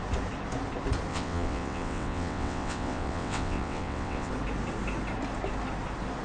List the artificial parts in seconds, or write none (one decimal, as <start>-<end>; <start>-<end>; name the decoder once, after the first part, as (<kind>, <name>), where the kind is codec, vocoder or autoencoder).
1.1-4.3 (vocoder, WaveNeXt)